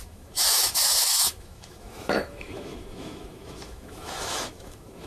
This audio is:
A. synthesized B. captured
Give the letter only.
A